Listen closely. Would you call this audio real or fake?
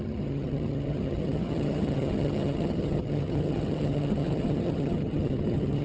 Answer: fake